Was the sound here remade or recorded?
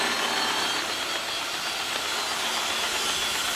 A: recorded